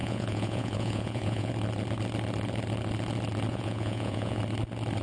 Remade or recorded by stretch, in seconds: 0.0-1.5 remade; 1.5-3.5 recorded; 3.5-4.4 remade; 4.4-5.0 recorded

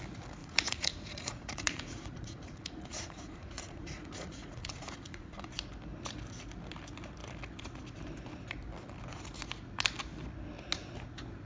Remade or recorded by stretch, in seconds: 0.0-0.4 recorded; 0.4-5.5 remade; 5.5-11.5 recorded